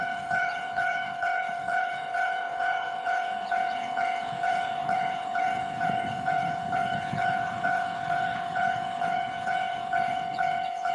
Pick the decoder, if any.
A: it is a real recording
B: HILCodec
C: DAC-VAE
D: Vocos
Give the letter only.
B